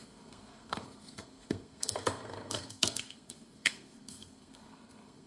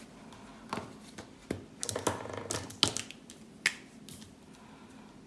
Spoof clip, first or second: first